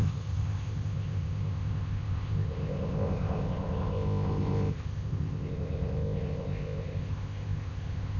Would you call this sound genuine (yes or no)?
no